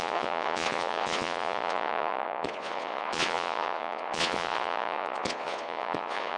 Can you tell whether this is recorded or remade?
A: remade